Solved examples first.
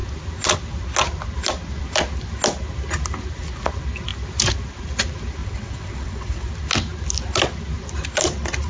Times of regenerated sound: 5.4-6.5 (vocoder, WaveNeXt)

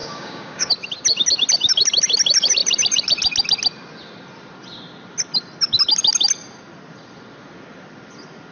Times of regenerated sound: 0.0-0.7 (codec, DAC)

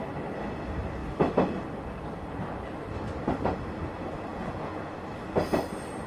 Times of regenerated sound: 4.3-4.9 (vocoder, Vocos)

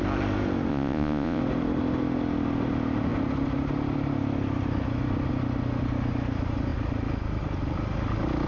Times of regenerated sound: 0.7-1.4 (vocoder, Vocos)